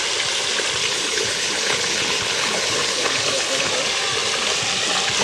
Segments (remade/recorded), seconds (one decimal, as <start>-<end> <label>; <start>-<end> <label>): 0.0-0.8 recorded; 0.8-3.7 remade; 3.7-5.2 recorded